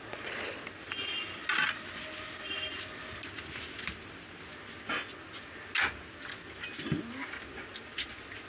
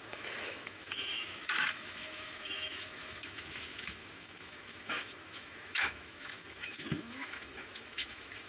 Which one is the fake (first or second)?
second